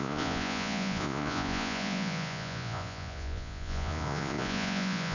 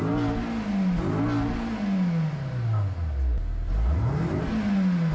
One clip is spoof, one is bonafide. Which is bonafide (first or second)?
second